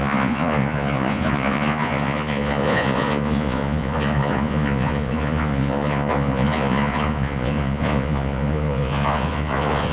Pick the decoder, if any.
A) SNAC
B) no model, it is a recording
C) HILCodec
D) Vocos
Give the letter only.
D